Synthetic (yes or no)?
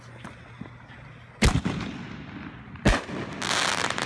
no